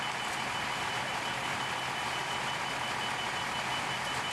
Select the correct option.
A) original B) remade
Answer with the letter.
A